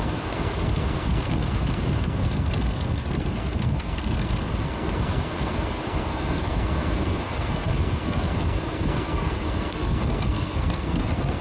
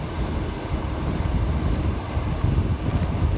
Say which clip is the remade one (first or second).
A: first